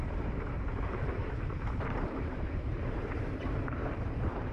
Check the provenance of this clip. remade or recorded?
remade